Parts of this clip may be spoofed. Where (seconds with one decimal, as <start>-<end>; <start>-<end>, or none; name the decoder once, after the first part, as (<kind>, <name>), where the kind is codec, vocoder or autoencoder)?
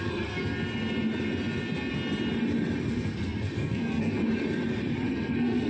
0.0-0.4 (codec, SNAC); 2.9-4.2; 5.1-5.7